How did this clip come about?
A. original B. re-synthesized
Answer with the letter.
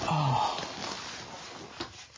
A